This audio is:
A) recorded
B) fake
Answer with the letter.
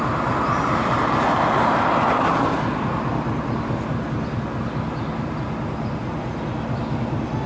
A